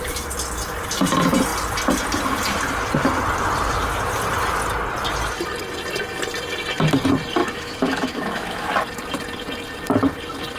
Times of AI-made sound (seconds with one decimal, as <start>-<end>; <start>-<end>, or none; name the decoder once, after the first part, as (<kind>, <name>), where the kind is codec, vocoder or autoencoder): 7.4-8.7 (autoencoder, DAC-VAE)